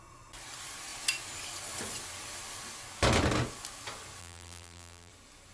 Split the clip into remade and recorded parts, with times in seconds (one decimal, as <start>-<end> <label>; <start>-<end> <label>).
0.0-4.2 recorded; 4.2-5.1 remade; 5.1-5.5 recorded